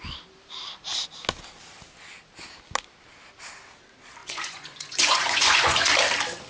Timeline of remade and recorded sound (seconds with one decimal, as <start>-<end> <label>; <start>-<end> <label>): 0.0-4.2 recorded; 4.2-5.9 remade; 5.9-6.5 recorded